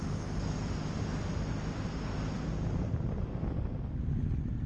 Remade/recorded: recorded